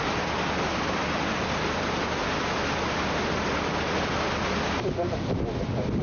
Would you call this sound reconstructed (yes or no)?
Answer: no